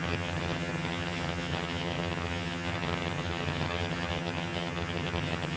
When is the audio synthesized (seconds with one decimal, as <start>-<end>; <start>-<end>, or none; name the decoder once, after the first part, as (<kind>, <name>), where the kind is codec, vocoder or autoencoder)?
0.0-5.6 (vocoder, HiFi-GAN)